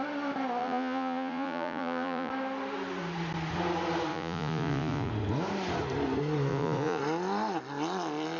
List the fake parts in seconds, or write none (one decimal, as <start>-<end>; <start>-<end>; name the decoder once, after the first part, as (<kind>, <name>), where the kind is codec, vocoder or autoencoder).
0.6-2.3 (vocoder, Vocos); 4.1-5.1; 6.5-7.0